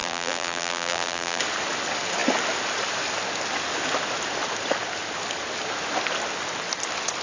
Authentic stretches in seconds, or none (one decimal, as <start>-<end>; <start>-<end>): 1.4-7.2